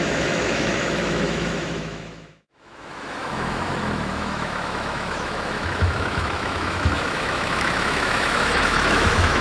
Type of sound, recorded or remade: remade